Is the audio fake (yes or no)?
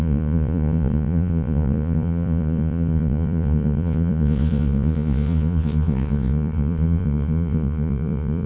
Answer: yes